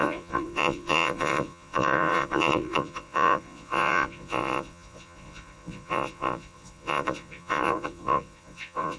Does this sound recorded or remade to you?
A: remade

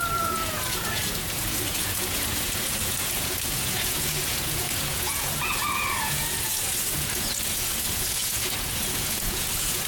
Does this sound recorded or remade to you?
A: remade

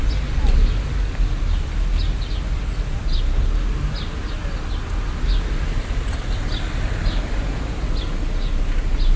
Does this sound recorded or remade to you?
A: recorded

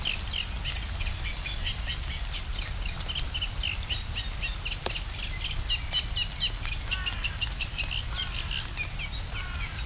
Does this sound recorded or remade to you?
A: recorded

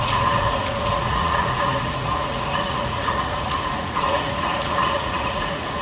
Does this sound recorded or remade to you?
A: remade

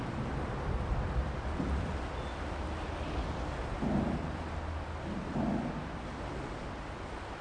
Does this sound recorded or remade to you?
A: recorded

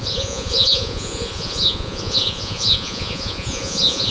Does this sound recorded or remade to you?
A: remade